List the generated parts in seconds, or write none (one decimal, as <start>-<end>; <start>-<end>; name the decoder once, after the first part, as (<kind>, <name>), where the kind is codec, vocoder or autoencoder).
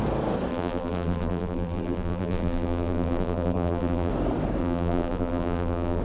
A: 0.5-4.1 (vocoder, BigVGAN v2); 4.6-6.0